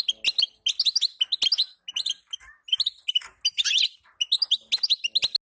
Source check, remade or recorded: recorded